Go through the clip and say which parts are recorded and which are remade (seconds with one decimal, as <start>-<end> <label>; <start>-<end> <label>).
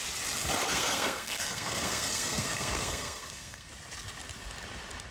0.0-0.6 recorded; 0.6-3.7 remade; 3.7-5.1 recorded